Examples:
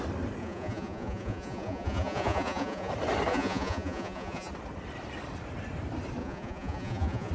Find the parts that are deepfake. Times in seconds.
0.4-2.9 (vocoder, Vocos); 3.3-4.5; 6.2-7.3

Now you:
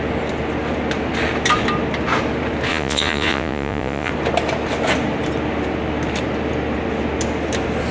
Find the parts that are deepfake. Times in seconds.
2.7-4.1 (vocoder, Vocos)

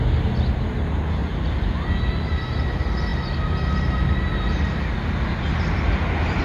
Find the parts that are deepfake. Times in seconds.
none